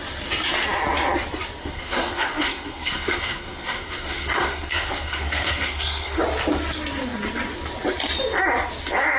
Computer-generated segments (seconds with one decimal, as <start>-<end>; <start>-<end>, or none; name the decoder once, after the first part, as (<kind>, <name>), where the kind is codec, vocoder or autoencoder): 1.6-6.2 (codec, SNAC)